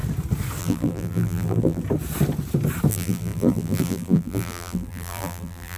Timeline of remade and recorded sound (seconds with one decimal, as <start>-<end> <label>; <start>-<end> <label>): 0.0-0.6 recorded; 0.6-1.8 remade; 1.8-2.9 recorded; 2.9-5.8 remade